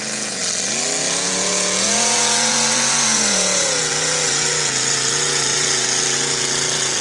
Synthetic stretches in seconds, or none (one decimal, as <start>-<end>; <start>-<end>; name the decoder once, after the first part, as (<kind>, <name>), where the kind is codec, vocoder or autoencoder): 0.0-0.4 (vocoder, Vocos); 1.0-7.0